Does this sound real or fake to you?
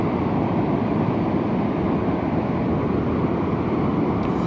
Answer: real